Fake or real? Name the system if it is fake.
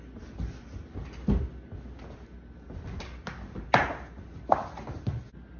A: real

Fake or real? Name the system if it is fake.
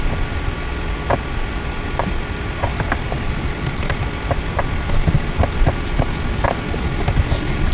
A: real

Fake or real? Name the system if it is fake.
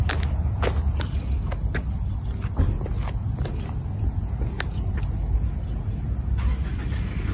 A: real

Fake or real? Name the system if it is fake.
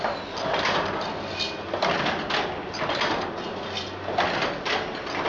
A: real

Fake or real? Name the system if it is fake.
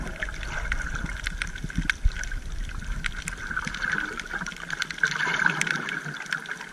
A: real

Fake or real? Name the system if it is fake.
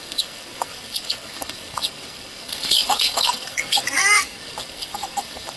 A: fake, codec, SNAC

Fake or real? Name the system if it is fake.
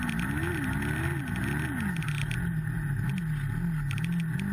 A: real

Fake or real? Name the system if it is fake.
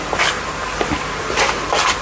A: real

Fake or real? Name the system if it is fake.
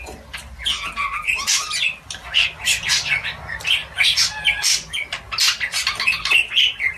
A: real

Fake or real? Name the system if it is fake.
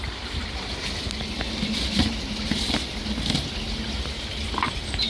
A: real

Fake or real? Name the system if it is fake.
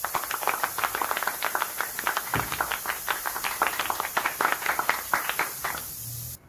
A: real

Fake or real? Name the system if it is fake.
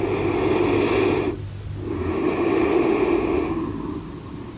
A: real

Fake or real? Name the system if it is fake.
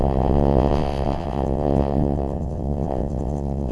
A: fake, vocoder, WaveNeXt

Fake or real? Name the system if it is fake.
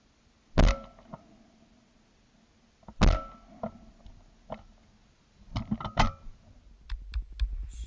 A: real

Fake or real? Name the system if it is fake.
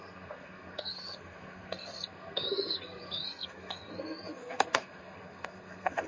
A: fake, codec, SNAC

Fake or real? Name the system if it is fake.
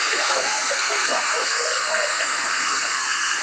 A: fake, codec, SNAC